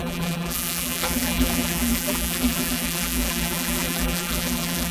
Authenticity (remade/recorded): remade